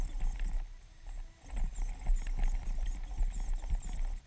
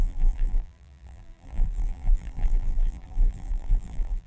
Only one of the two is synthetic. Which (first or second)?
second